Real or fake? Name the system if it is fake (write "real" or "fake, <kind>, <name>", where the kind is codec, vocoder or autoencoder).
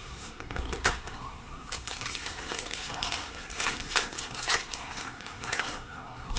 fake, codec, SNAC